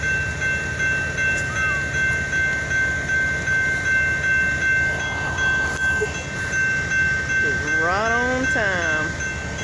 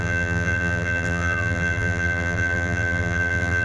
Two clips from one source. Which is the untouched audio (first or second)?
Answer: first